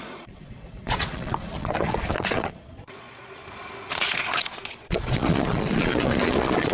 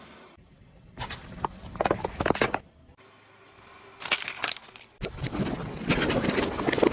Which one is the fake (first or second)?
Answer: first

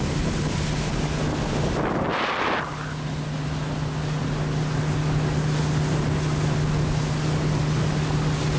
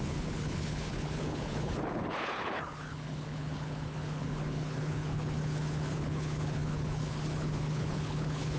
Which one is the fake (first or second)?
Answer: second